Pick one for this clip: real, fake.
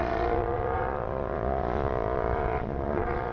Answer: fake